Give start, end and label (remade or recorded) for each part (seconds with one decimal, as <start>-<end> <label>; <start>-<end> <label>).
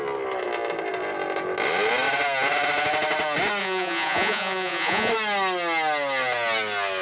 0.0-3.6 recorded; 3.6-5.1 remade; 5.1-7.0 recorded